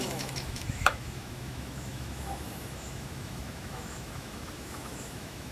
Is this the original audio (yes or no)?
no